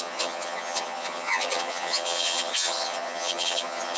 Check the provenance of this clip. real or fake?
fake